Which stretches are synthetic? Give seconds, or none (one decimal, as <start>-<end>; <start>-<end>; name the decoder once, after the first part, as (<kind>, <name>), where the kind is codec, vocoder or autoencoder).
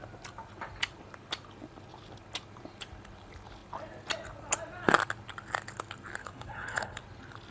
6.2-7.0 (codec, HILCodec)